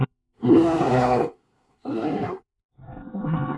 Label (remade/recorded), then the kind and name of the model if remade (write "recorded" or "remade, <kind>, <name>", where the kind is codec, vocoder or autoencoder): remade, codec, SNAC